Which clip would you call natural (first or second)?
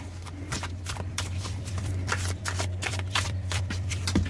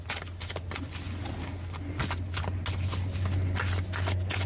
second